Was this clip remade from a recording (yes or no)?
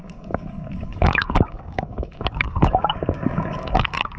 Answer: yes